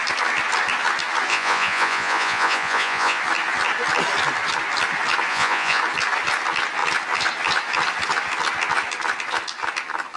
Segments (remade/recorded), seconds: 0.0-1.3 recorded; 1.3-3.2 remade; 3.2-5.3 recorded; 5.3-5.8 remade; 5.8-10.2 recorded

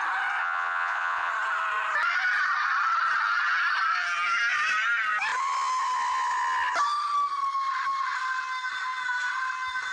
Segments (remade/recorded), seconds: 0.0-0.4 recorded; 0.4-1.3 remade; 1.3-9.9 recorded

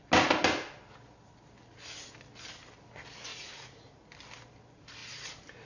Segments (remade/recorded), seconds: 0.0-3.3 recorded; 3.3-4.1 remade; 4.1-5.7 recorded

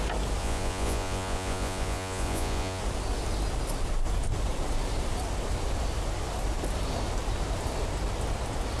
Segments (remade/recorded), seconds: 0.0-0.4 recorded; 0.4-2.8 remade; 2.8-8.8 recorded